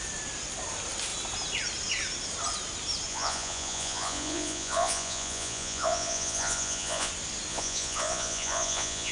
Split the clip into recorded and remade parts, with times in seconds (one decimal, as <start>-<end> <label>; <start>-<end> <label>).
0.0-3.1 recorded; 3.1-7.1 remade; 7.1-7.5 recorded; 7.5-9.1 remade